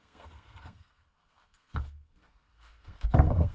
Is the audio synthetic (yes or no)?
yes